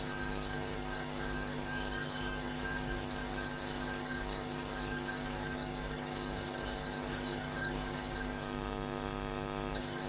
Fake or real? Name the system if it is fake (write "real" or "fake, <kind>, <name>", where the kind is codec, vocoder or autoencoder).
fake, codec, DAC